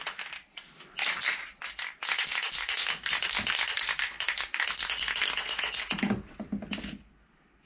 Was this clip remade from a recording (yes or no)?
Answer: no